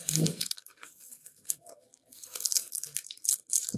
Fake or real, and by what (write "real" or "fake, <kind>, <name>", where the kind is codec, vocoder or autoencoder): fake, codec, SNAC